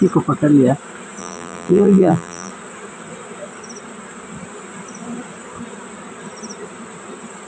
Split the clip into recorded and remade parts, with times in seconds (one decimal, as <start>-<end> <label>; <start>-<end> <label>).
0.0-1.2 recorded; 1.2-2.5 remade; 2.5-7.5 recorded

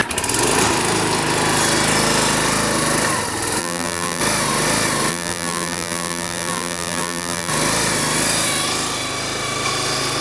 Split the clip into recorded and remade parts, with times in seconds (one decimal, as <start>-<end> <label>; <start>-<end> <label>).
0.0-3.6 recorded; 3.6-4.2 remade; 4.2-5.1 recorded; 5.1-7.5 remade; 7.5-10.2 recorded

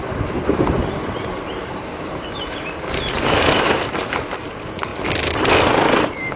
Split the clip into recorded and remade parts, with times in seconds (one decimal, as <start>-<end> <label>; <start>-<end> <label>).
0.0-4.9 remade; 4.9-6.4 recorded

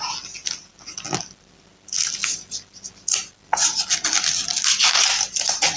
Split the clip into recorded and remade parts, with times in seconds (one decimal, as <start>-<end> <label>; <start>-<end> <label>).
0.0-4.5 recorded; 4.5-5.8 remade

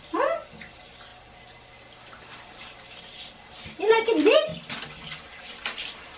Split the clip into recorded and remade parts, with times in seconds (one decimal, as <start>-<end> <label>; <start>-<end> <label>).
0.0-6.2 remade